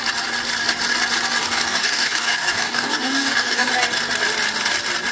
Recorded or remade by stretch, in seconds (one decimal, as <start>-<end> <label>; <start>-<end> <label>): 0.0-1.4 recorded; 1.4-3.7 remade; 3.7-5.1 recorded